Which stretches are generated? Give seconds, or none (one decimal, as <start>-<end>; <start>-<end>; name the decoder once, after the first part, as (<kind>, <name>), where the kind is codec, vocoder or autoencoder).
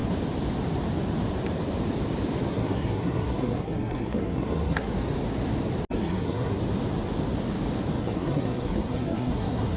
2.5-4.9 (codec, SNAC); 5.9-6.6; 8.0-9.8